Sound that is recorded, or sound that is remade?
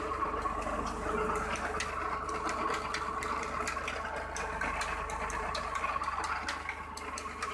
recorded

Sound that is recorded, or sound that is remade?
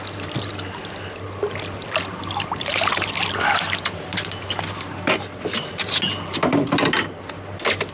recorded